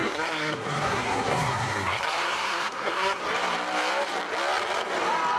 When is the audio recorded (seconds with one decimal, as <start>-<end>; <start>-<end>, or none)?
3.2-5.4